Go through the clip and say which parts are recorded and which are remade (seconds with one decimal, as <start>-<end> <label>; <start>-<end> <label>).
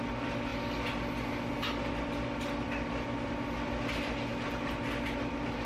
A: 0.0-5.7 recorded